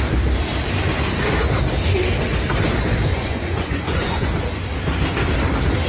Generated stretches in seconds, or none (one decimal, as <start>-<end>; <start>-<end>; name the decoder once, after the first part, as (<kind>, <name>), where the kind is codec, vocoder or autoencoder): 3.1-4.3 (vocoder, Vocos)